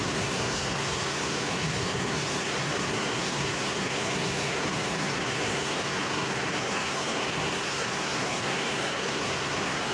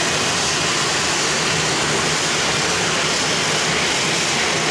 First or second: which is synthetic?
first